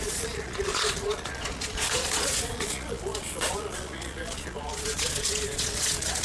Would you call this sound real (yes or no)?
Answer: no